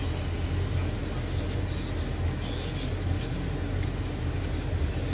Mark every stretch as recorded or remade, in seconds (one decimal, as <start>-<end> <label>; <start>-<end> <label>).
0.0-5.1 recorded